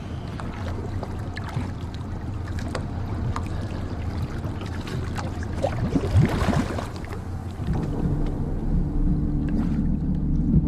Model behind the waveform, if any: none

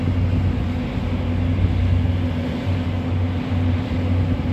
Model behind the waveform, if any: none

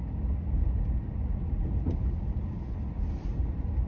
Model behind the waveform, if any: none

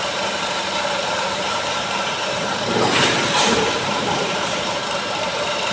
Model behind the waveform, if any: vocoder, BigVGAN v2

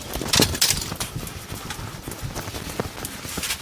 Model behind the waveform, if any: none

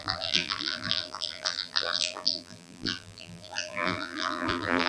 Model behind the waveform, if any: vocoder, BigVGAN v2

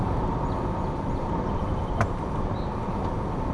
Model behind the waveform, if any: none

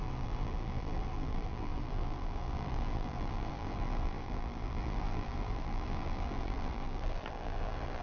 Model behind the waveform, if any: vocoder, BigVGAN v2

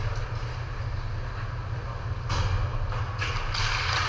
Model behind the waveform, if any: none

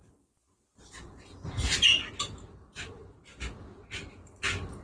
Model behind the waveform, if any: vocoder, BigVGAN v2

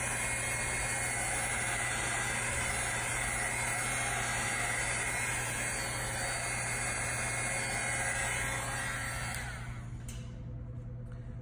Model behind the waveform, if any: none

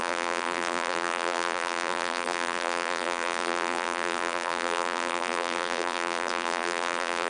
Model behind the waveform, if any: vocoder, BigVGAN v2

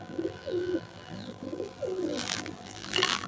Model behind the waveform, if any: vocoder, BigVGAN v2